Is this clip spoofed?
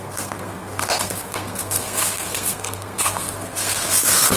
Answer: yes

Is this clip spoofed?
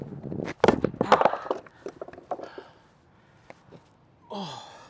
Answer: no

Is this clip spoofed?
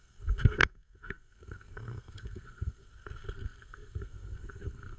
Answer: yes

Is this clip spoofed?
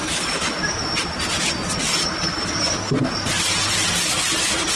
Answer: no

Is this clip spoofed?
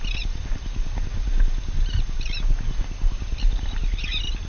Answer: no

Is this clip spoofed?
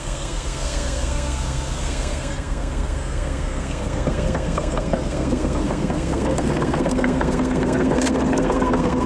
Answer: yes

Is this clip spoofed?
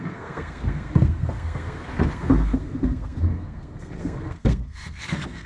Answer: yes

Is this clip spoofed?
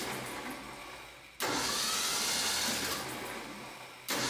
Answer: no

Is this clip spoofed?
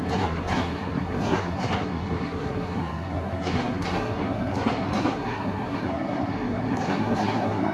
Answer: yes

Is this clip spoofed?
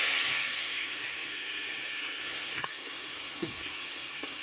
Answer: yes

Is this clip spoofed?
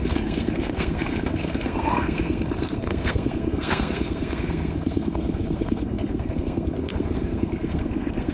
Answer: yes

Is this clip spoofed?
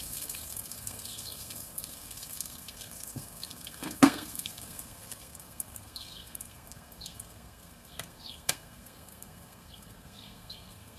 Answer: yes